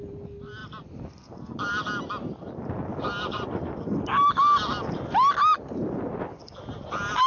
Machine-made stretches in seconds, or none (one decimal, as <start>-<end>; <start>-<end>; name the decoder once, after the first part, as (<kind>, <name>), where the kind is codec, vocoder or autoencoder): none